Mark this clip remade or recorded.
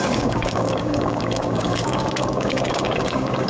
remade